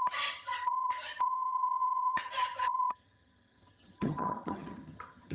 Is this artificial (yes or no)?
yes